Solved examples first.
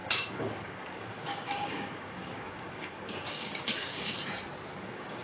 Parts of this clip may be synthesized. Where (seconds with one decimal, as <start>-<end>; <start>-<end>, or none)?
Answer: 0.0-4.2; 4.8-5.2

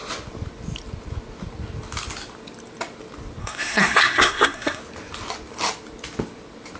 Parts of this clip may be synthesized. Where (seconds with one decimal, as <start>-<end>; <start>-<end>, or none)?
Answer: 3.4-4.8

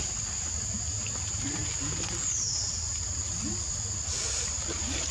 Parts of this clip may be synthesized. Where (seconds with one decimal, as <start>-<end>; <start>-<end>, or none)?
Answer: none

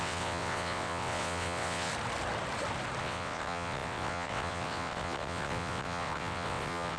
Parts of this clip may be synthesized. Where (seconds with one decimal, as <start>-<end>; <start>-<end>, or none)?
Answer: 0.0-1.9; 3.0-7.0

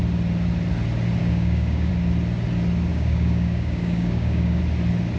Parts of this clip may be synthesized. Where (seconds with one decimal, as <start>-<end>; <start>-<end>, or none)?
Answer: 1.2-1.9; 2.9-4.6

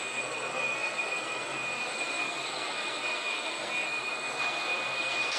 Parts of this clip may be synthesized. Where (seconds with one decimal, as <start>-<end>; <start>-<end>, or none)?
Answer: 0.0-5.4

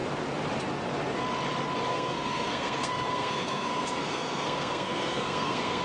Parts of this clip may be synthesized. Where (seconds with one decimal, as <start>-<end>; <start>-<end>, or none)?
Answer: 1.9-5.8